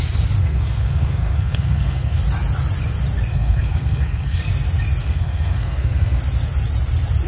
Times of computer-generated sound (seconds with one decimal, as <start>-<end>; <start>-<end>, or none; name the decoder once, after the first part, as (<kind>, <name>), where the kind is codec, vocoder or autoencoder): 0.4-2.2 (codec, SNAC); 3.3-4.4; 5.0-6.2

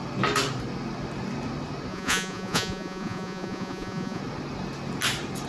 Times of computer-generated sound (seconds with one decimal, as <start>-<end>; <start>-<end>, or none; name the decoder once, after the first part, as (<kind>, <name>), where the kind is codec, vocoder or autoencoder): 1.9-4.2 (vocoder, Vocos)

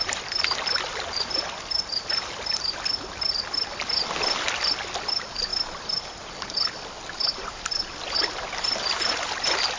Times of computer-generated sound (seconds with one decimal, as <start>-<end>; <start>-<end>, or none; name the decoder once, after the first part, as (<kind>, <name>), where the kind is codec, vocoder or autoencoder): none

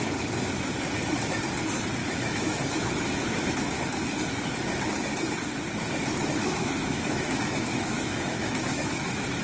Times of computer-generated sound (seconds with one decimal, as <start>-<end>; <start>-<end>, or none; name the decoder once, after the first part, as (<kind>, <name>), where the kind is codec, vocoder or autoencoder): 2.0-3.5 (autoencoder, DAC-VAE); 6.4-9.4

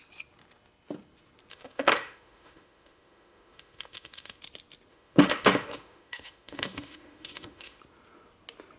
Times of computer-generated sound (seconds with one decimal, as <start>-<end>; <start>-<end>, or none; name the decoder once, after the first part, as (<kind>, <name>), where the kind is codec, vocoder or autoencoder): 1.5-4.4 (autoencoder, DAC-VAE); 4.9-7.8